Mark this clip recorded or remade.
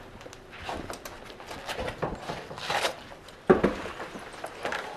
recorded